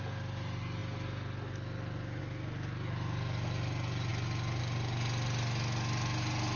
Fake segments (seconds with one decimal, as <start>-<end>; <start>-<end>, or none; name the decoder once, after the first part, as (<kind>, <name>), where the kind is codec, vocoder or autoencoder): none